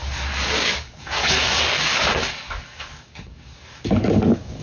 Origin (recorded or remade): remade